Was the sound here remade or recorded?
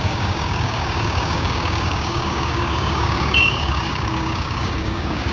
remade